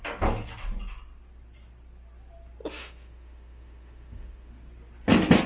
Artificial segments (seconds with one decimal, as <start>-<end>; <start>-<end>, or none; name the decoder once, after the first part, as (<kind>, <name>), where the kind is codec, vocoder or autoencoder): 2.8-4.5 (autoencoder, DAC-VAE)